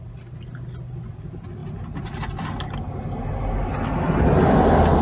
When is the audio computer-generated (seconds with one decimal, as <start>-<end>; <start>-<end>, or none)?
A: none